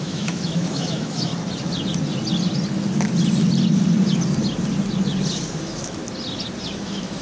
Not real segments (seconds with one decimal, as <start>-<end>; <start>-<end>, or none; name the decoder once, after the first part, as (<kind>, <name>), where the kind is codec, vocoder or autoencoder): 0.0-1.3 (autoencoder, DAC-VAE); 5.6-6.0; 6.7-7.2

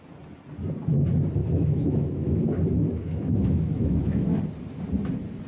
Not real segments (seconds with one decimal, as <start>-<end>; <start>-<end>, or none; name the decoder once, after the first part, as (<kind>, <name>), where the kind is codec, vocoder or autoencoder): 1.4-2.4 (autoencoder, DAC-VAE); 2.8-4.4

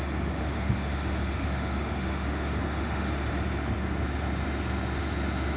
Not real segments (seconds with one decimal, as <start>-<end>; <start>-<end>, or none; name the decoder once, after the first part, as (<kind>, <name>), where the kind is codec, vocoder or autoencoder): 0.4-3.1 (autoencoder, DAC-VAE)

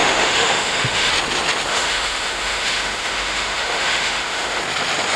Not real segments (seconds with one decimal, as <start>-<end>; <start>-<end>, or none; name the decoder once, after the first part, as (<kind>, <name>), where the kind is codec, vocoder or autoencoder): 0.0-1.1 (autoencoder, DAC-VAE); 1.7-4.6

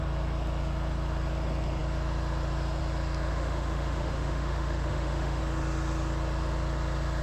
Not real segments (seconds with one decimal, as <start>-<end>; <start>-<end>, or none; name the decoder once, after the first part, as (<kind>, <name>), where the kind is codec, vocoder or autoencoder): 3.3-5.4 (autoencoder, DAC-VAE)

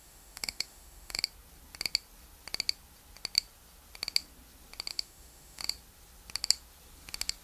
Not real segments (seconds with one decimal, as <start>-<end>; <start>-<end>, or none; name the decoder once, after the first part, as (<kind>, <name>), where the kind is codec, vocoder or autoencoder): 0.0-1.2 (autoencoder, DAC-VAE); 4.9-5.6